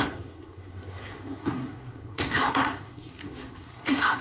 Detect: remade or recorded remade